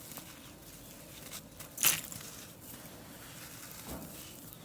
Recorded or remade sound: recorded